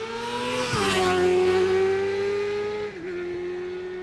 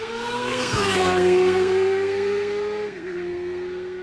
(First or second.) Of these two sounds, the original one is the first